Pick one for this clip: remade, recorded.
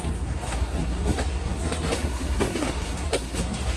remade